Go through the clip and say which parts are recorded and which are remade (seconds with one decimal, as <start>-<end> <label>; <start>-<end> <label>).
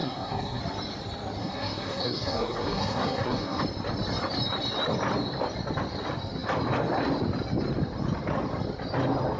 0.0-0.6 remade; 0.6-1.4 recorded; 1.4-3.6 remade; 3.6-9.4 recorded